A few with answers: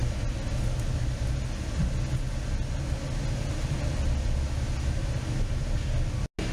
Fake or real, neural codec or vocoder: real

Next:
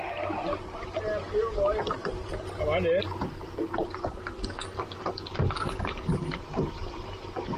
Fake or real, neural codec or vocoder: real